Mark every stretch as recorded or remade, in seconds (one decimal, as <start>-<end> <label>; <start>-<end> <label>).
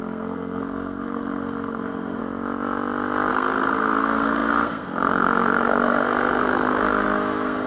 0.0-2.2 remade; 2.2-3.3 recorded; 3.3-7.7 remade